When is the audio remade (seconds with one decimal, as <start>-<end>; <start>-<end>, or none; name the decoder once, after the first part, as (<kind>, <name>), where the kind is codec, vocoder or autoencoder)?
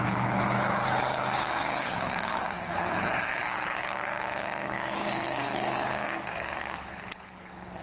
0.0-7.8 (codec, HILCodec)